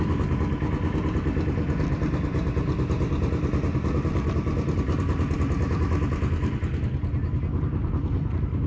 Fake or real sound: real